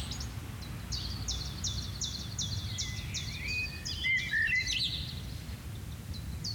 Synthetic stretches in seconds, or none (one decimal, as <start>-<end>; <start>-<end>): none